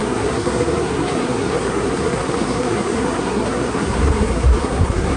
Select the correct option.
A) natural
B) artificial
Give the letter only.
B